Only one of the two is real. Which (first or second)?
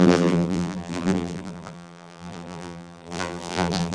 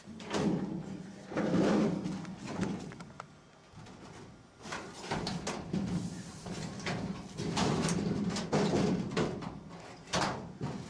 second